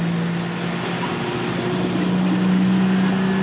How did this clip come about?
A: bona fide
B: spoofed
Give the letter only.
A